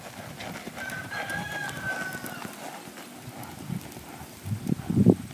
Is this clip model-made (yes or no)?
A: no